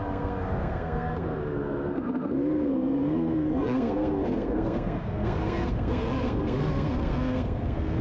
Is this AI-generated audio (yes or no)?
yes